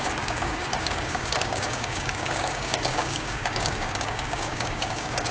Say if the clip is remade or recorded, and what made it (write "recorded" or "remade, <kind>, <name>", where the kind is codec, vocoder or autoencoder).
remade, codec, DAC